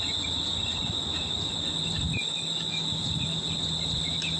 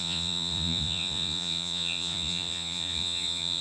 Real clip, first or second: first